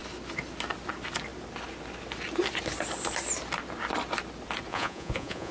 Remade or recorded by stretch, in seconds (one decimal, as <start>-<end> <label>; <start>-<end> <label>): 0.0-4.7 recorded; 4.7-5.5 remade